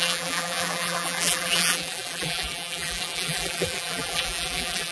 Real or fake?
fake